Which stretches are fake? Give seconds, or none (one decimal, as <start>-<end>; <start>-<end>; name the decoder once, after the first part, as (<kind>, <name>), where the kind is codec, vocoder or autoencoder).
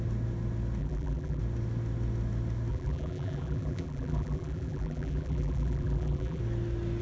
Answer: 0.8-1.4 (vocoder, BigVGAN v2); 2.7-6.4